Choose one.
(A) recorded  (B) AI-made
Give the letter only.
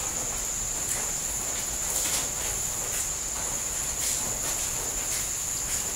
A